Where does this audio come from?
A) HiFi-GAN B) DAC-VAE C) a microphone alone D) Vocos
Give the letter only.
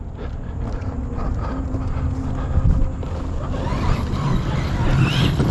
C